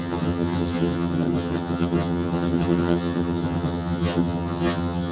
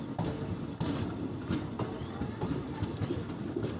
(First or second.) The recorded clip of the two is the second